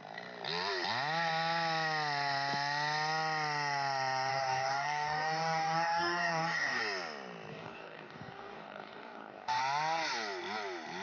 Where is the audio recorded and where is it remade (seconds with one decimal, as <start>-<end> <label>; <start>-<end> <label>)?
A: 0.0-4.3 recorded; 4.3-6.8 remade; 6.8-7.5 recorded; 7.5-9.6 remade; 9.6-11.0 recorded